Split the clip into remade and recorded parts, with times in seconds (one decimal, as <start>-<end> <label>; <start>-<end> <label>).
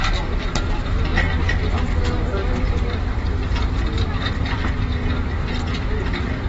0.0-2.4 recorded; 2.4-3.0 remade; 3.0-6.5 recorded